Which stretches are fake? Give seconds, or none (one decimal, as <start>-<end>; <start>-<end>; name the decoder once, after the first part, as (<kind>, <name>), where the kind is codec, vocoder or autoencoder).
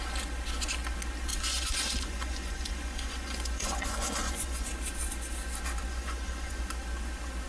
1.3-4.7 (vocoder, Vocos); 5.9-6.6